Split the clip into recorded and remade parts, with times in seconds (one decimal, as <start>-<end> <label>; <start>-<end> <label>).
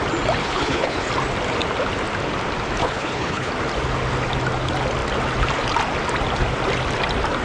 0.0-0.4 recorded; 0.4-1.1 remade; 1.1-2.8 recorded; 2.8-3.5 remade; 3.5-7.4 recorded